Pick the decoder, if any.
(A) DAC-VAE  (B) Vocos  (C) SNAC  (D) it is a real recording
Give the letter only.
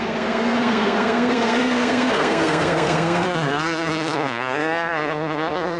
C